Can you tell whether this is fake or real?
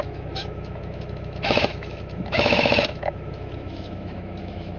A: fake